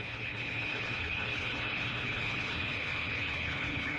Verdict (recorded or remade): remade